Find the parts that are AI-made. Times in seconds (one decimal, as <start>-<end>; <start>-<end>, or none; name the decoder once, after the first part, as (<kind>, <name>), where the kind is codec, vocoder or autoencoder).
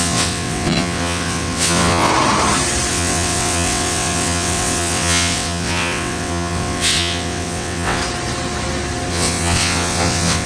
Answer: 0.0-2.1 (vocoder, WaveNeXt); 2.9-8.0; 9.1-10.5